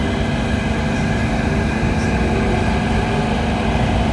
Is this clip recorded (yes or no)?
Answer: yes